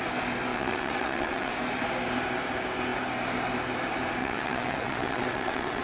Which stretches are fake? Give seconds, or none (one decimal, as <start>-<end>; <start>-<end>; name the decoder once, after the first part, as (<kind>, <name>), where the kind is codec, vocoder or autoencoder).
0.5-1.5 (vocoder, WaveNeXt); 4.2-5.8